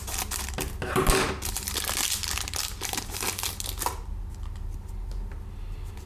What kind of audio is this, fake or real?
real